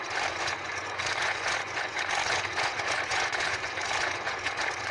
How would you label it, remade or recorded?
remade